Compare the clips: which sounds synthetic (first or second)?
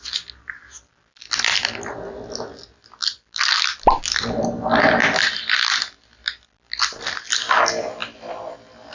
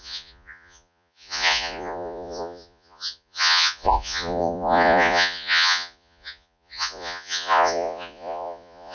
second